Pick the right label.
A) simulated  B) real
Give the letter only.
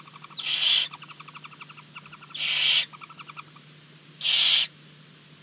B